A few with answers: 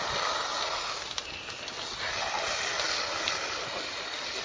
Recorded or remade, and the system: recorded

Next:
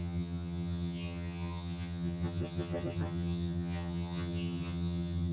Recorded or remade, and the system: remade, vocoder, HiFi-GAN